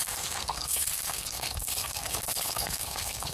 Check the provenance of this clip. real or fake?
fake